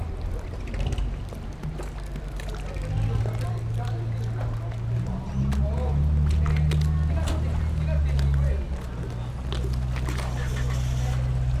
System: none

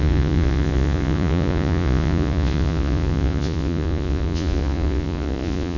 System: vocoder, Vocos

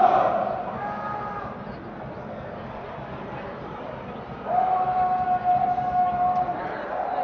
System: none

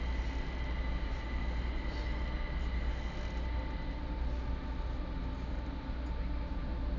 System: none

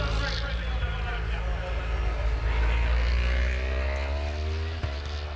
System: none